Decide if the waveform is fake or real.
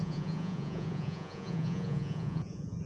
fake